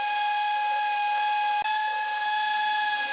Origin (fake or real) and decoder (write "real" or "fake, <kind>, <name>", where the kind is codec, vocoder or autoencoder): real